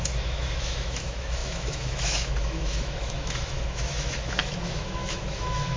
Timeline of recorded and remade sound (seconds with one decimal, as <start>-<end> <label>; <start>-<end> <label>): 0.0-5.8 remade